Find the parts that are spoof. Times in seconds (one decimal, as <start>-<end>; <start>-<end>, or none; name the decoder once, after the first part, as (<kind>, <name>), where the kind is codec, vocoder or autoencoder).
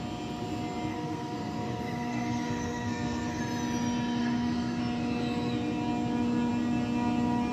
0.9-3.4 (codec, SNAC); 4.2-4.8